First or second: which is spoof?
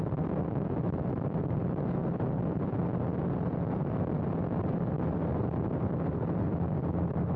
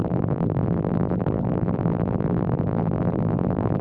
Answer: second